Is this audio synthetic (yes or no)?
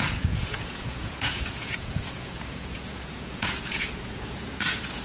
yes